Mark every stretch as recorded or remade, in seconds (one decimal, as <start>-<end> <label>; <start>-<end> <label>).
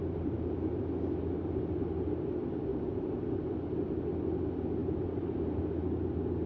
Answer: 0.0-0.8 remade; 0.8-4.8 recorded; 4.8-5.6 remade; 5.6-6.5 recorded